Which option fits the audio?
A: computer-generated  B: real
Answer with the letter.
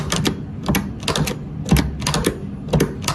B